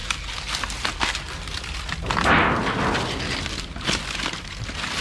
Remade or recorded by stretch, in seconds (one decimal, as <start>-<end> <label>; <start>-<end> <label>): 0.0-5.0 recorded